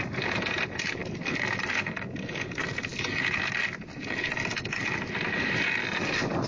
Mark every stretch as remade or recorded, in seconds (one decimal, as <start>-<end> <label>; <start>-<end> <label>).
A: 0.0-6.5 recorded